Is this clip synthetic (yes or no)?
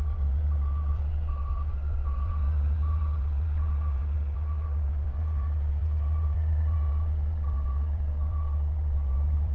yes